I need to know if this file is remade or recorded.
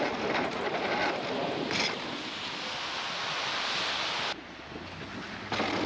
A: recorded